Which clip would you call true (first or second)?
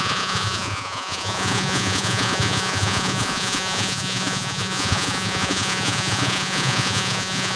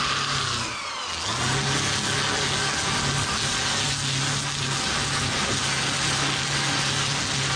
second